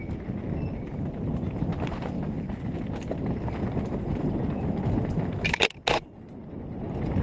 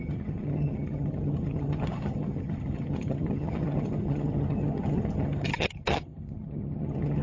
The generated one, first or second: second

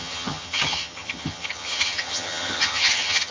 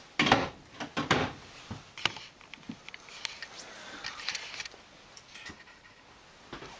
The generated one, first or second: first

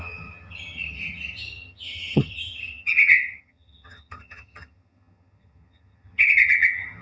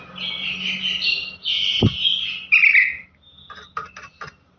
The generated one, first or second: first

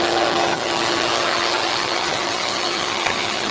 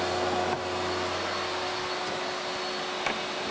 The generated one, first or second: first